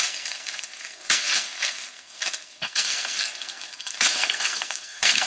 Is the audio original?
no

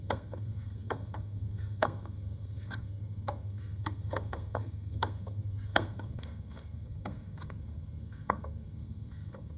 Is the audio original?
no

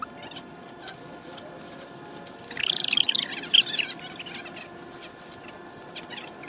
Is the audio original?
yes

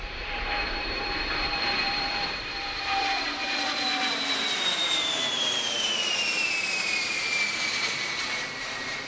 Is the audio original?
no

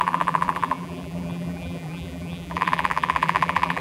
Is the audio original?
no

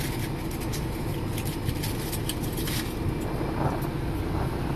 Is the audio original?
yes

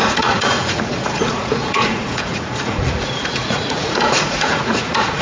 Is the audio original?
no